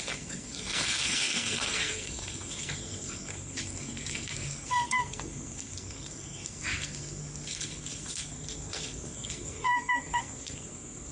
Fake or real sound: fake